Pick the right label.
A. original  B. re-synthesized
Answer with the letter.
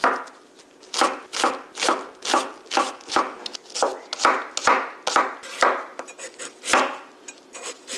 A